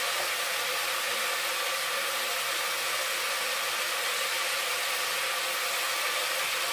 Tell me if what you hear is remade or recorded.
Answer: recorded